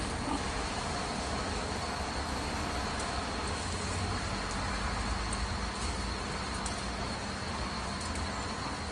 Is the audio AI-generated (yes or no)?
no